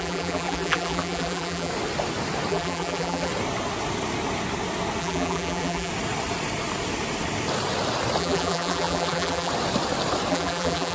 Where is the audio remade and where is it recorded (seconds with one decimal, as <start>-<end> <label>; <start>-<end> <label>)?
0.0-1.7 remade; 1.7-2.5 recorded; 2.5-3.3 remade; 3.3-5.0 recorded; 5.0-5.9 remade; 5.9-8.2 recorded; 8.2-9.5 remade; 9.5-10.3 recorded; 10.3-10.9 remade